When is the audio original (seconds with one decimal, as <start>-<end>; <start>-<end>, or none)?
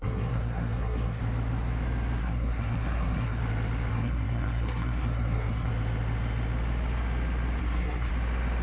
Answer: 1.2-2.2; 3.4-3.9; 5.7-7.6; 8.1-8.6